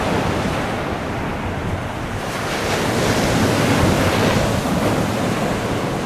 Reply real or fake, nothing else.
real